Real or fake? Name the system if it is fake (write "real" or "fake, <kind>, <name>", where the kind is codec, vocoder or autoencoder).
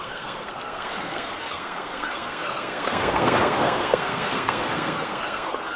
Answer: fake, codec, SNAC